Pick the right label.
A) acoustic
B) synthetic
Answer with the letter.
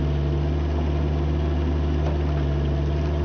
A